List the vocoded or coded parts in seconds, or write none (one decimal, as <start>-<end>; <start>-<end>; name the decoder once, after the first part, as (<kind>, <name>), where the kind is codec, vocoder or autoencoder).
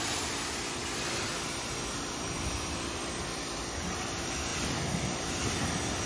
0.0-4.5 (vocoder, BigVGAN v2); 5.4-6.1